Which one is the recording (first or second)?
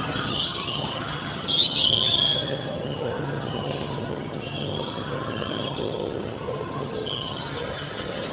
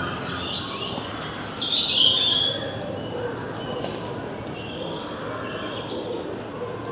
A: second